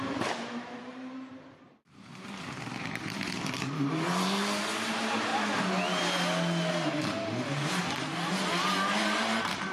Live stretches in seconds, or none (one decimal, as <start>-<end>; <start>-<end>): 5.3-6.7